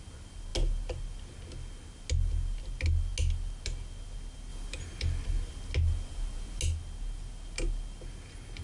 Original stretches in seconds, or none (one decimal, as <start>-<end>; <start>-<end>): 0.0-8.6

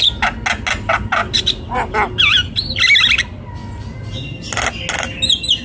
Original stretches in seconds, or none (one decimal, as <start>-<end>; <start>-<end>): 0.0-5.6

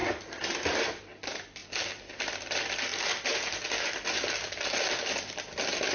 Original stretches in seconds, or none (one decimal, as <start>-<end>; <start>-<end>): 0.0-5.9

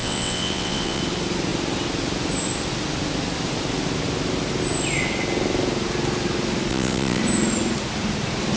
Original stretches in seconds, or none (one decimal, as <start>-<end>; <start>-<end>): 1.0-6.7; 7.2-8.6

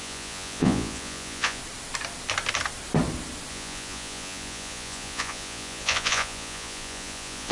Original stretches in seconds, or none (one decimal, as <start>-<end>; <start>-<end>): 1.6-3.5

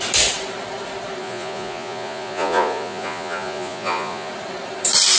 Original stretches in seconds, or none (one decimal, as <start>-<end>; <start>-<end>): 0.0-1.2; 4.3-5.2